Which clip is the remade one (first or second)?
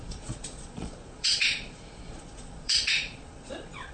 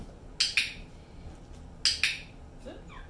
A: first